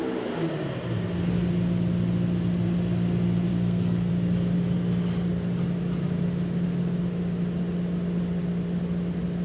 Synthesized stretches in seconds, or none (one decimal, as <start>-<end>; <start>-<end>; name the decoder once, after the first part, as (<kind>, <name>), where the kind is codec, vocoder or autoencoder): 3.5-4.1 (codec, SNAC)